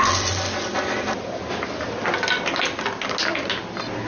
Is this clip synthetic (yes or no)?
no